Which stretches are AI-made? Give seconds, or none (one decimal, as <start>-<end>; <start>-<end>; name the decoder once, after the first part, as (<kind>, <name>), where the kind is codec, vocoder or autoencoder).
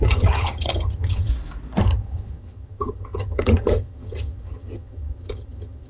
0.0-1.3 (vocoder, HiFi-GAN); 1.8-5.9